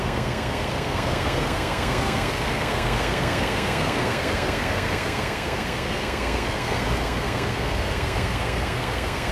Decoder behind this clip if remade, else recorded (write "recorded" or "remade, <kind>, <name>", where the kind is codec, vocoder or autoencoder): remade, codec, SNAC